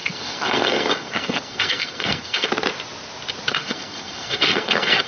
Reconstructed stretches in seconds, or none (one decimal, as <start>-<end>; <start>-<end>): 0.0-2.5; 3.5-5.1